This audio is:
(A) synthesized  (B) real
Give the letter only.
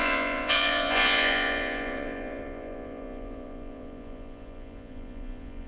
A